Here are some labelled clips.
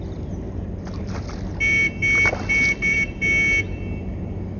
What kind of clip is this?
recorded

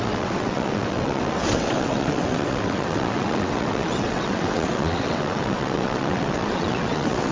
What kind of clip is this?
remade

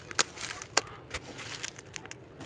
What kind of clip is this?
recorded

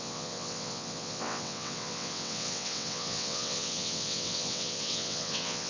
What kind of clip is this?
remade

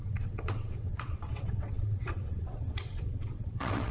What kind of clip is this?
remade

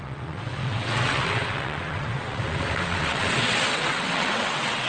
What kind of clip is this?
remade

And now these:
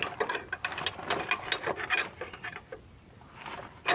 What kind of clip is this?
recorded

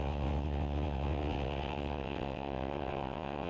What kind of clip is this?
remade